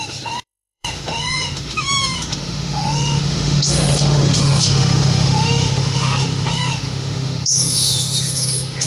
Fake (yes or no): yes